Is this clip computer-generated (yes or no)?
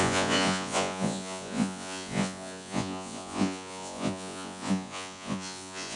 yes